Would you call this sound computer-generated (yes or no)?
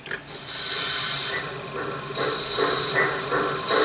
no